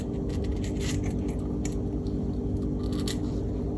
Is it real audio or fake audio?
real